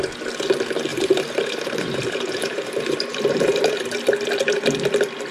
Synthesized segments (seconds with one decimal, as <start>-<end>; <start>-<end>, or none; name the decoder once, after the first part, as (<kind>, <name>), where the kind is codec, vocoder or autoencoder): 0.9-4.1 (vocoder, BigVGAN v2)